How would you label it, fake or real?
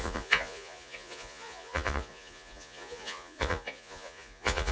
fake